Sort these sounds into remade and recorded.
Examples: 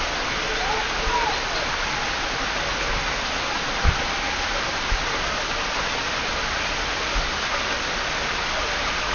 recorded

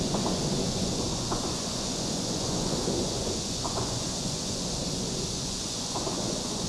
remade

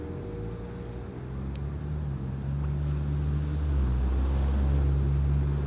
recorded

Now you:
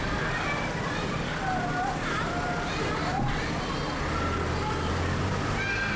recorded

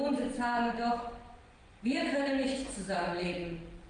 remade